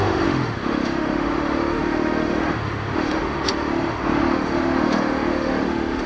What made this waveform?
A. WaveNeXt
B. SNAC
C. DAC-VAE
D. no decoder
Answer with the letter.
C